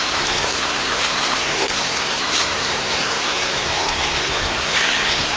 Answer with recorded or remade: remade